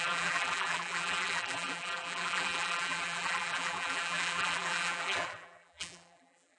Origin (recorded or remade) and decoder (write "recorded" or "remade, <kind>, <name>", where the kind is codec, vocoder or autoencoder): remade, vocoder, BigVGAN v2